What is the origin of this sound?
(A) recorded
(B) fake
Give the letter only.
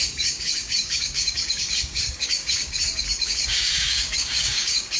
B